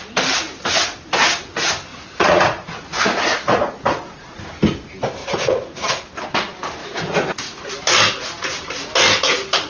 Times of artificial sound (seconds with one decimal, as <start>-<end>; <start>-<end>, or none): 1.9-4.4; 5.2-5.9; 6.8-7.7